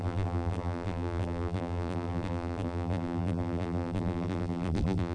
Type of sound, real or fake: fake